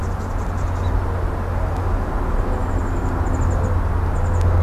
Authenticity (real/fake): real